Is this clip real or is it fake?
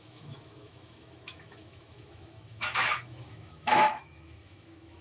fake